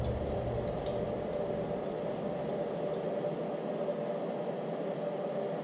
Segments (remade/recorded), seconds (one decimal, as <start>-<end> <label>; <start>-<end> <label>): 0.0-5.6 recorded